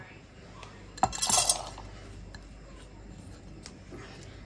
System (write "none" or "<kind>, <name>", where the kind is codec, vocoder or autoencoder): none